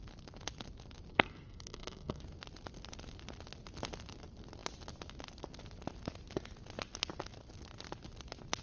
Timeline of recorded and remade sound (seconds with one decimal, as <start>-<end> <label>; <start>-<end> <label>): 0.0-1.1 recorded; 1.1-2.2 remade; 2.2-8.6 recorded